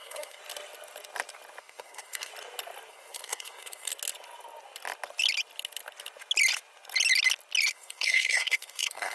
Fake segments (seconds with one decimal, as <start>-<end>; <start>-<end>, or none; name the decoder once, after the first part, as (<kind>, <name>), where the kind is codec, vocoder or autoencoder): 0.0-0.4 (codec, SNAC); 1.6-2.3; 2.9-3.9; 7.7-9.1